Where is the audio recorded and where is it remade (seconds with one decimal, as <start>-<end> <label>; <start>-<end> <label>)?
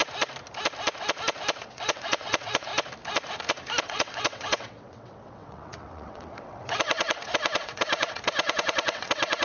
0.0-1.6 recorded; 1.6-2.7 remade; 2.7-3.8 recorded; 3.8-9.4 remade